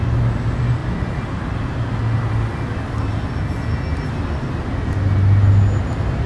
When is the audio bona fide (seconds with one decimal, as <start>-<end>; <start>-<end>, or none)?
0.0-6.3